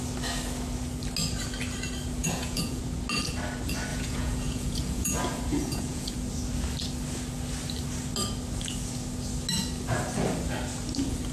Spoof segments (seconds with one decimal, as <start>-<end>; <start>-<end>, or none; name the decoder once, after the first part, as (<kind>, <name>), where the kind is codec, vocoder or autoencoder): 2.2-2.8 (vocoder, Vocos); 3.9-5.1; 5.5-6.1